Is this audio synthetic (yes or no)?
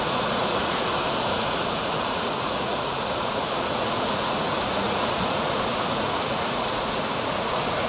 yes